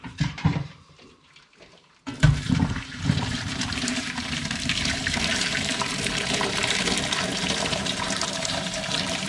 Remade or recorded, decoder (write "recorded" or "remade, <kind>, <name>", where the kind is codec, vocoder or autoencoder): remade, vocoder, BigVGAN v2